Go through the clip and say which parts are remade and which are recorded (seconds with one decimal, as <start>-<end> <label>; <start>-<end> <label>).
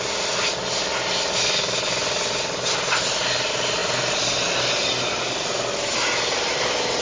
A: 0.0-7.0 recorded